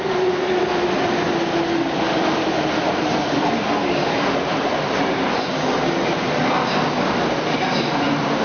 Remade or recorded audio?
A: recorded